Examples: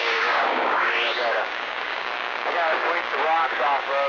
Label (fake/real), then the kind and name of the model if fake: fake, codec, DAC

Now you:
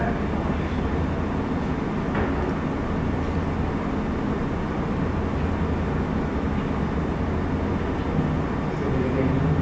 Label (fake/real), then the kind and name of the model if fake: real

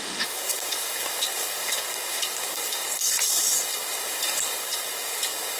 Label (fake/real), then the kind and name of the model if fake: fake, codec, DAC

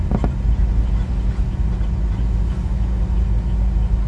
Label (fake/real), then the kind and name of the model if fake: real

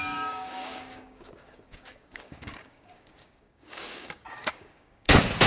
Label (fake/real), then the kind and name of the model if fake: fake, codec, DAC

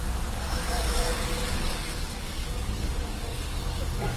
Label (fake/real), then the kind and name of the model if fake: fake, codec, DAC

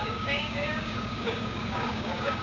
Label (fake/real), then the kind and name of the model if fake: fake, codec, DAC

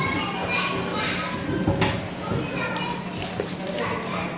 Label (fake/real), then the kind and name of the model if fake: real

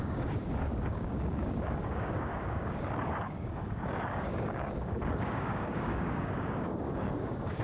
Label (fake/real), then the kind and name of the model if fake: fake, codec, DAC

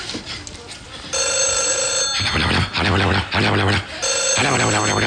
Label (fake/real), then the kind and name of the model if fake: real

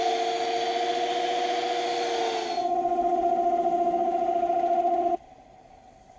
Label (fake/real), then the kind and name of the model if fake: real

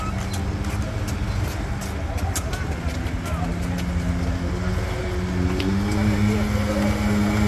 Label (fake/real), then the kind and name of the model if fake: real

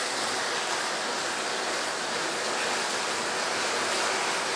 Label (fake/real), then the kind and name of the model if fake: real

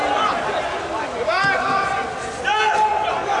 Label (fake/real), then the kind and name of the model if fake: real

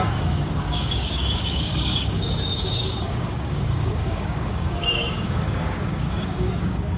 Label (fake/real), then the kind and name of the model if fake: fake, codec, DAC